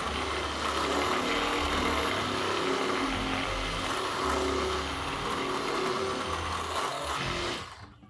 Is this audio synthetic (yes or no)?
no